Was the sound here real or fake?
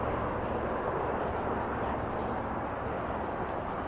real